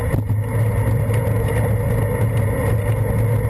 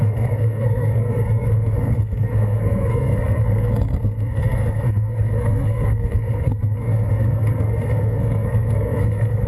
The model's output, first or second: second